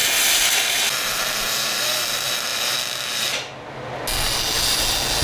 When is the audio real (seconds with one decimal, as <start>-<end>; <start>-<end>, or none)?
0.0-5.2